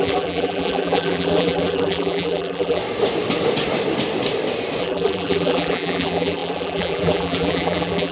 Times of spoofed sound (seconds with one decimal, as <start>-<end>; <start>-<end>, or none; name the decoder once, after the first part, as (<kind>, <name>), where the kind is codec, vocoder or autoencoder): 0.0-2.8 (vocoder, BigVGAN v2); 4.8-8.1

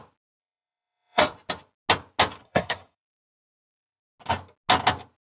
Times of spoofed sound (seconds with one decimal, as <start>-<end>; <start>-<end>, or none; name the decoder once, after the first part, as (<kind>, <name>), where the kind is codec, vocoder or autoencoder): 0.4-1.2 (codec, SNAC); 2.4-4.0

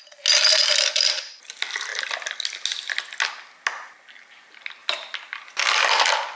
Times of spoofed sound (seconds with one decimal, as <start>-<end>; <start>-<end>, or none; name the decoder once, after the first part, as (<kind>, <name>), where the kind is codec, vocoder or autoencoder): 0.6-1.3 (vocoder, BigVGAN v2)

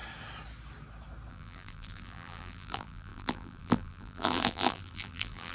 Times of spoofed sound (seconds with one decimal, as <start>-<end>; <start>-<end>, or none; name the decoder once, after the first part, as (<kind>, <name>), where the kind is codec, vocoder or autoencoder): 1.3-5.5 (vocoder, BigVGAN v2)

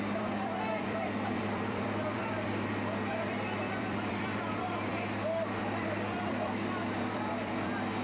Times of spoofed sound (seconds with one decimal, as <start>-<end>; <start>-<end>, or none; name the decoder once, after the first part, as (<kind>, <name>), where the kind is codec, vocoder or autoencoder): 0.0-4.9 (vocoder, BigVGAN v2); 5.6-8.0

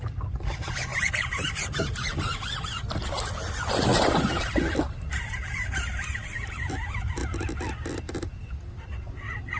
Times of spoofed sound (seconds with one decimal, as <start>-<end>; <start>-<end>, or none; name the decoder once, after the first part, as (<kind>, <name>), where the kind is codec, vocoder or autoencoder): none

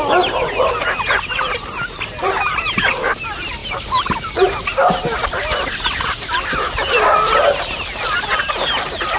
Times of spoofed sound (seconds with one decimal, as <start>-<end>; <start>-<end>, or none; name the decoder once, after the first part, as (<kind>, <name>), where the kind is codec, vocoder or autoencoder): none